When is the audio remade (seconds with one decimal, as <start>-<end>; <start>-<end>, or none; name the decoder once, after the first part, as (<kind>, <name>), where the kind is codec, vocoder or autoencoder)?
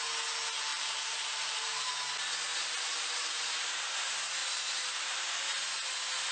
0.7-1.9 (vocoder, BigVGAN v2); 2.5-3.7; 4.4-5.2